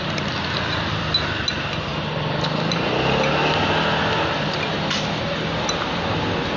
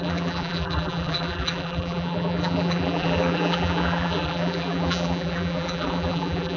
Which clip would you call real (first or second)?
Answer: first